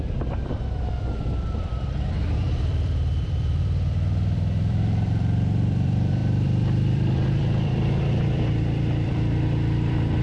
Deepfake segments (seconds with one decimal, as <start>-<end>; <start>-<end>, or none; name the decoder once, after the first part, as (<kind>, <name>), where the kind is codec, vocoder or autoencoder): 0.0-10.2 (vocoder, BigVGAN v2)